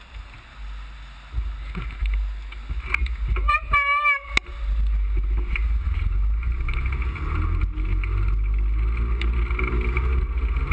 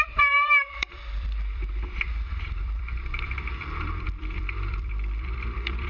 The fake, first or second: second